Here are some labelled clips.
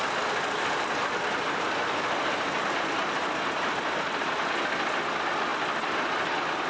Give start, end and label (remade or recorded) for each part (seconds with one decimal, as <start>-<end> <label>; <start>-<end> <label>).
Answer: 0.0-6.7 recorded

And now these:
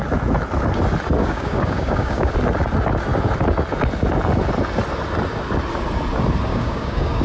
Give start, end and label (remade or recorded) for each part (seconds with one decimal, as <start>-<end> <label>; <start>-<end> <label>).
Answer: 0.0-1.2 recorded; 1.2-2.3 remade; 2.3-6.5 recorded; 6.5-7.2 remade

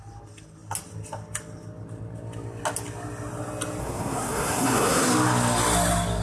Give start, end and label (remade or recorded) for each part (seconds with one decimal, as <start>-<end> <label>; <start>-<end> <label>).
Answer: 0.0-3.8 recorded; 3.8-5.1 remade; 5.1-6.2 recorded

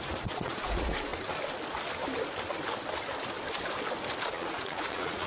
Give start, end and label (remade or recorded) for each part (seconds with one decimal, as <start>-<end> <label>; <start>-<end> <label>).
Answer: 0.0-1.1 remade; 1.1-4.3 recorded; 4.3-5.3 remade

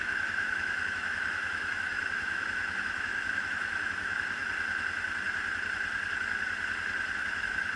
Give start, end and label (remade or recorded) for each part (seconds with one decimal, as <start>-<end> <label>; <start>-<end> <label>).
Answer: 0.0-4.4 remade; 4.4-7.2 recorded; 7.2-7.8 remade

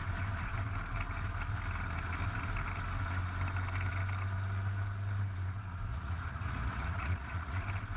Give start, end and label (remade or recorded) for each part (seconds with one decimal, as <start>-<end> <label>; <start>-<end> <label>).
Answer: 0.0-5.9 recorded; 5.9-7.6 remade; 7.6-8.0 recorded